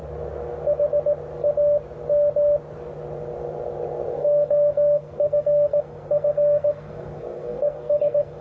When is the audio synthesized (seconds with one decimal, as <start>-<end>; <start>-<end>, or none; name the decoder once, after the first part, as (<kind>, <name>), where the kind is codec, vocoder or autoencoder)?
4.1-8.4 (codec, SNAC)